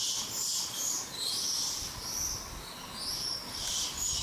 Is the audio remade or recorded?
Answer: recorded